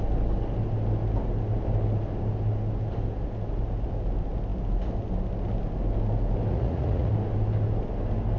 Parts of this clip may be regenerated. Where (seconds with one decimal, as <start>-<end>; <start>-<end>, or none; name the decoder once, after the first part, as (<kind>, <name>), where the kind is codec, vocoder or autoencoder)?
6.5-7.1 (vocoder, Vocos)